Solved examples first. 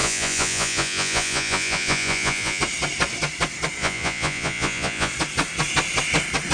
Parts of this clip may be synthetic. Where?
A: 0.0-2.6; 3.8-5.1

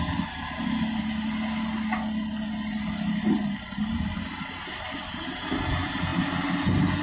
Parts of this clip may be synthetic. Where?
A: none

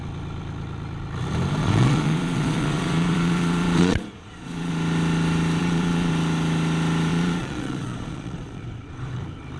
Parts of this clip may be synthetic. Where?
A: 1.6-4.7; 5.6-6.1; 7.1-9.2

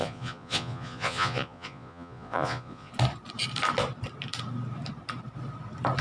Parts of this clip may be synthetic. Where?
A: 0.0-2.9

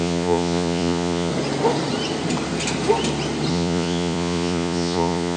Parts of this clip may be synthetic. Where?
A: 0.0-1.3; 3.5-5.4

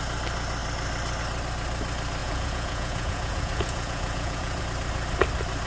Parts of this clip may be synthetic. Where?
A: 2.2-4.6